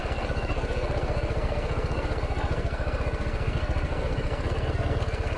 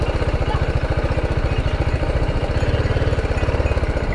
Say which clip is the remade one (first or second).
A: first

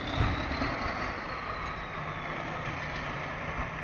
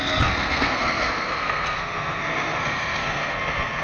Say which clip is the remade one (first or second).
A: second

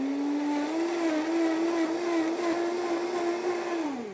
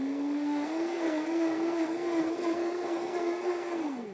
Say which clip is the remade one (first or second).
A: second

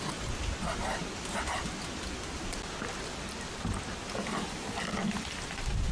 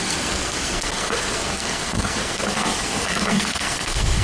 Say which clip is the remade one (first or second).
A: second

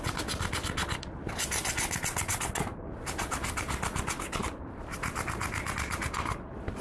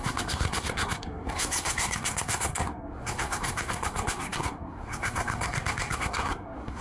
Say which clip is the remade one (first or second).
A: second